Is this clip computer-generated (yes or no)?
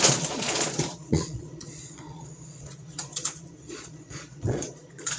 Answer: yes